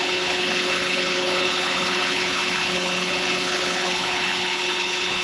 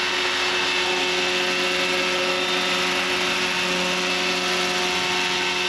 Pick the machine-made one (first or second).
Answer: first